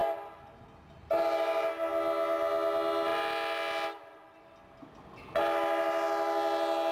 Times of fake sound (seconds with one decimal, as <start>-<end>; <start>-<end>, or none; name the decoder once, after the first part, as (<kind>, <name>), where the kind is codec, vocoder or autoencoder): none